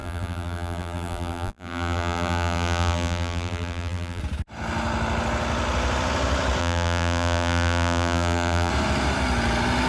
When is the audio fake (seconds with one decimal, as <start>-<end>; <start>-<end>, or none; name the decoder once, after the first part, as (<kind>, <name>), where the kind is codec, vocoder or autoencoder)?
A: 0.0-4.2 (vocoder, BigVGAN v2); 6.6-8.7